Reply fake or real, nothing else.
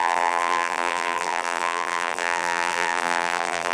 fake